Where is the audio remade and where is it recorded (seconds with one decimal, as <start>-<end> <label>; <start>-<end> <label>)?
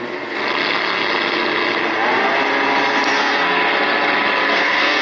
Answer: 0.0-0.4 remade; 0.4-3.1 recorded; 3.1-3.6 remade; 3.6-4.5 recorded; 4.5-5.0 remade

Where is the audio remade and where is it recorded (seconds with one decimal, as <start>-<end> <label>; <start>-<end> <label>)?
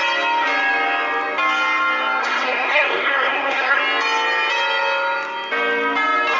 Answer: 0.0-2.2 recorded; 2.2-3.8 remade; 3.8-6.4 recorded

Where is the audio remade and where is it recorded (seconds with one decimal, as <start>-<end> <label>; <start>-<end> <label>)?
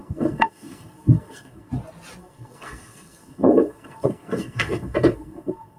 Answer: 0.0-1.7 remade; 1.7-2.2 recorded; 2.2-5.8 remade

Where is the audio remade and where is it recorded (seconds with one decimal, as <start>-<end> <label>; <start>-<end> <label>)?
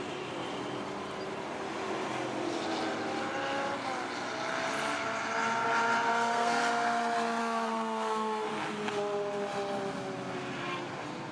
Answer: 0.0-6.1 recorded; 6.1-6.6 remade; 6.6-7.4 recorded; 7.4-8.5 remade; 8.5-11.3 recorded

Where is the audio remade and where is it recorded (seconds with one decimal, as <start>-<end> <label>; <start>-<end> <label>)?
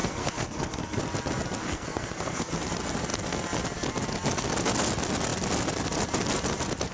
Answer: 0.0-1.0 remade; 1.0-1.6 recorded; 1.6-2.5 remade; 2.5-6.9 recorded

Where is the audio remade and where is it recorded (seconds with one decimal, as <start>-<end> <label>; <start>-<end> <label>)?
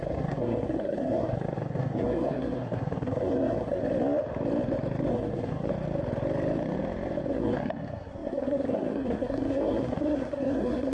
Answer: 0.0-3.8 remade; 3.8-5.1 recorded; 5.1-5.7 remade; 5.7-7.3 recorded; 7.3-10.9 remade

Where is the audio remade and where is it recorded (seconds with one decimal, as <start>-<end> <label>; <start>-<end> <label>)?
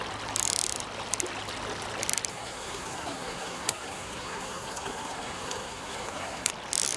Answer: 0.0-2.3 recorded; 2.3-6.5 remade; 6.5-7.0 recorded